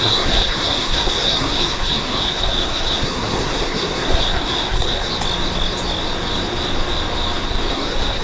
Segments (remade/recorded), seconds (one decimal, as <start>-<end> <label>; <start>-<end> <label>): 0.0-5.1 remade; 5.1-7.7 recorded; 7.7-8.2 remade